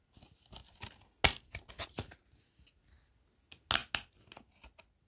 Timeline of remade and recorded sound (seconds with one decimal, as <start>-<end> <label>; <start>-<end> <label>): 0.0-5.1 recorded